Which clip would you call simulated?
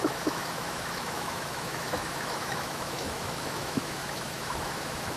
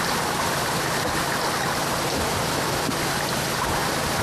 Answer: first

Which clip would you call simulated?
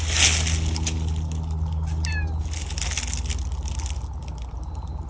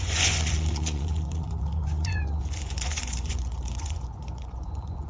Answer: second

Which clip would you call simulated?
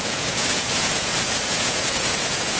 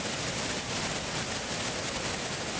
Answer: first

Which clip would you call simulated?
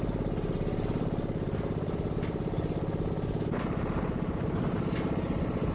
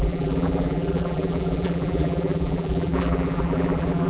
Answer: second